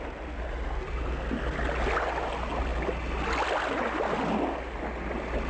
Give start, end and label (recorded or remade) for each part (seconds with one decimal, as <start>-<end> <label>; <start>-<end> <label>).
0.0-5.5 recorded